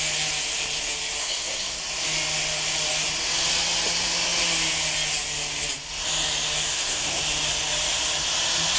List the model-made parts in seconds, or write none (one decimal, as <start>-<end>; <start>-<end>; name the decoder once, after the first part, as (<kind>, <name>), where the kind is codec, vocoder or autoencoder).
1.2-1.8 (codec, SNAC); 6.7-7.2